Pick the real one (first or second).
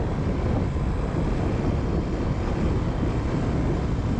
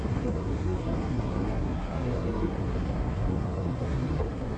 first